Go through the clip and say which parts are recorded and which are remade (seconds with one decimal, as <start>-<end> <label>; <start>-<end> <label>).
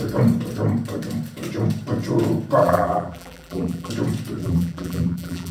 0.0-2.6 recorded; 2.6-3.9 remade; 3.9-4.4 recorded; 4.4-5.5 remade